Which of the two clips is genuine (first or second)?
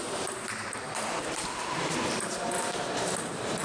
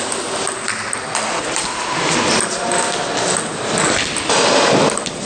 second